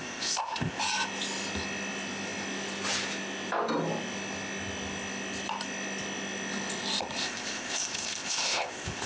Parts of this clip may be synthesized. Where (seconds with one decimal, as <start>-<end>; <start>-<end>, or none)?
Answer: 0.0-0.8; 7.2-9.1